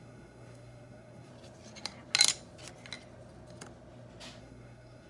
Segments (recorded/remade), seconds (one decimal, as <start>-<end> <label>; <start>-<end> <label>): 0.0-1.3 remade; 1.3-4.4 recorded; 4.4-5.1 remade